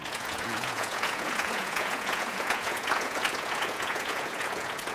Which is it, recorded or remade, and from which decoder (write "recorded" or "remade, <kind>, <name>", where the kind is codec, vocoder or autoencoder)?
remade, vocoder, Vocos